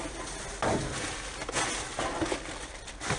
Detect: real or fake real